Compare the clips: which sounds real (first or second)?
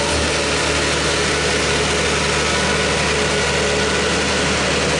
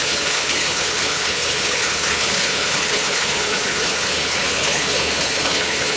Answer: first